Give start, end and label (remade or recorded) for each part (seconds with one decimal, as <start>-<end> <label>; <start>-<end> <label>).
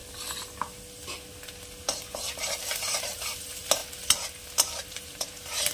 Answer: 0.0-3.4 recorded; 3.4-3.8 remade; 3.8-4.9 recorded; 4.9-5.7 remade